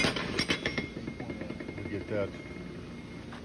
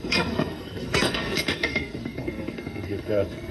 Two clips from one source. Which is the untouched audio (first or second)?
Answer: first